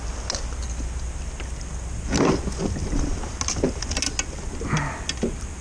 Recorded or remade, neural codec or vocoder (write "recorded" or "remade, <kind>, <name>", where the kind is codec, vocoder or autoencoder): recorded